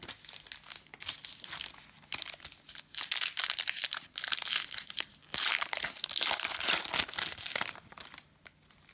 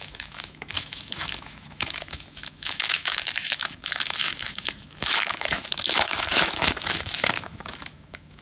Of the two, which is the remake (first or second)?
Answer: second